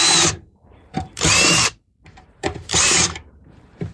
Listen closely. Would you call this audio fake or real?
fake